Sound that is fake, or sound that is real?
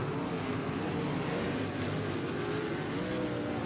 real